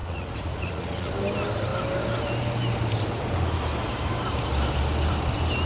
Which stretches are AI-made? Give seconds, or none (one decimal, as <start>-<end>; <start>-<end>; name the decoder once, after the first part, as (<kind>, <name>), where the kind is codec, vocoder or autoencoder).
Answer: 0.0-1.1 (vocoder, Vocos)